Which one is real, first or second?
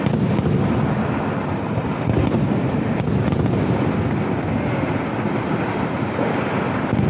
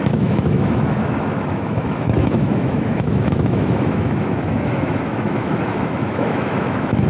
first